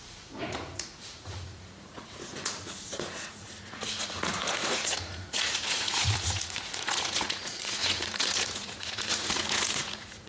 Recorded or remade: remade